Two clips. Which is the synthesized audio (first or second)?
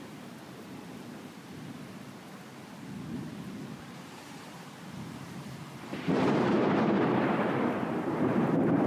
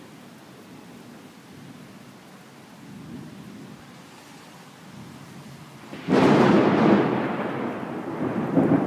first